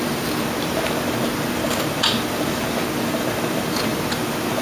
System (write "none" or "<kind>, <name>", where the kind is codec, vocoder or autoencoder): none